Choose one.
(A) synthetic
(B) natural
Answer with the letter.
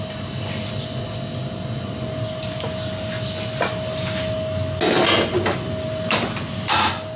B